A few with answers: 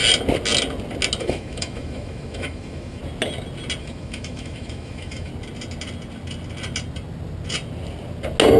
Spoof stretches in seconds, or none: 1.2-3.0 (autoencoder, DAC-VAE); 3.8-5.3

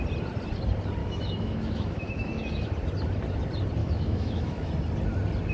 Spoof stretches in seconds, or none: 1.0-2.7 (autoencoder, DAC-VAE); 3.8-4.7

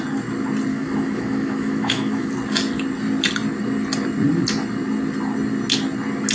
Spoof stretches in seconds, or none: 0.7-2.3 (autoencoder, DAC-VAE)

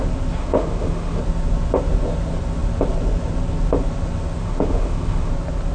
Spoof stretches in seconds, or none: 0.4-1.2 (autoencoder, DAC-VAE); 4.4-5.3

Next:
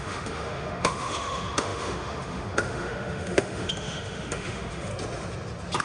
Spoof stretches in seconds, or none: 0.0-4.9 (autoencoder, DAC-VAE)

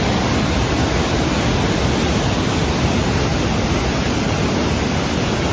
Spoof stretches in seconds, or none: none

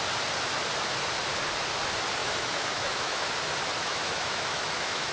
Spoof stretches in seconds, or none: 2.2-3.3 (autoencoder, DAC-VAE); 3.8-5.1